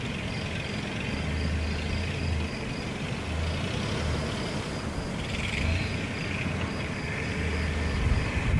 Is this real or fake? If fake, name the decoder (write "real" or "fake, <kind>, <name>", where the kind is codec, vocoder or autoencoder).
real